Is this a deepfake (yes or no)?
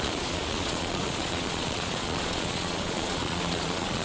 yes